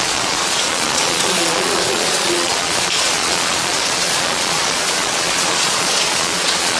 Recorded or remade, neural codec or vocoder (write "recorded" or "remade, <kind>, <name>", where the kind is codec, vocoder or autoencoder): remade, vocoder, Vocos